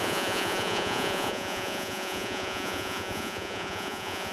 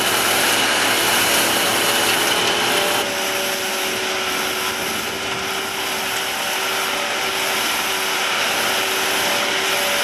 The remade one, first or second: first